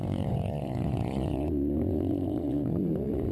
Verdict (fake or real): fake